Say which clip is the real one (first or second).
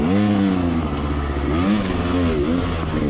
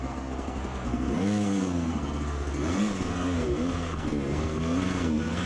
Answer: first